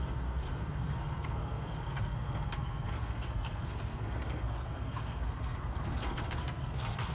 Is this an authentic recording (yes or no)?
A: no